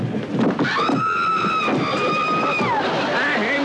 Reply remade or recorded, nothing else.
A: recorded